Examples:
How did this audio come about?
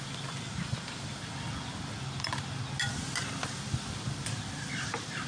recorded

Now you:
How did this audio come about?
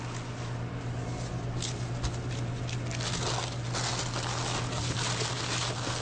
recorded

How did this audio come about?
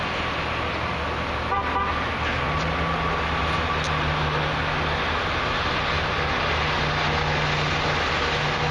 recorded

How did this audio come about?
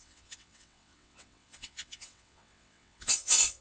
remade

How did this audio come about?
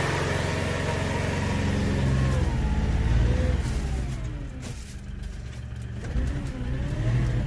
recorded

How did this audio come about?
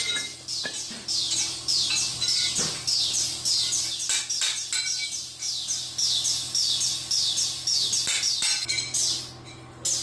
recorded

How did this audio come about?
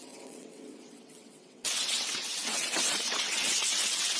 remade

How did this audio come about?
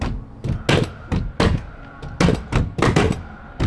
recorded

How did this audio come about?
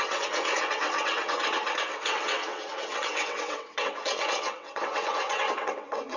remade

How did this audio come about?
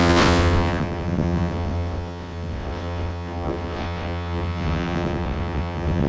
remade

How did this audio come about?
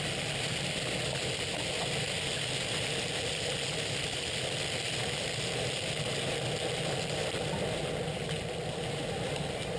recorded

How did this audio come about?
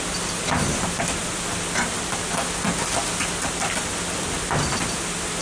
recorded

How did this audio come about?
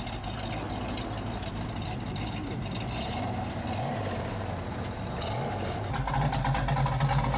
recorded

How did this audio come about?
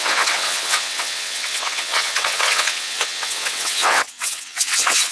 remade